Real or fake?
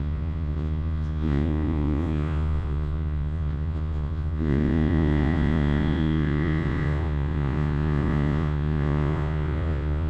fake